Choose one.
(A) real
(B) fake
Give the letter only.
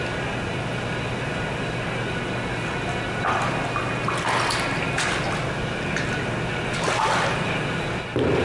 A